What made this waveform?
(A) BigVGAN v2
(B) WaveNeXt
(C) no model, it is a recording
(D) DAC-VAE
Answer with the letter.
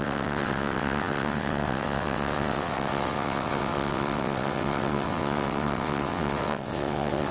B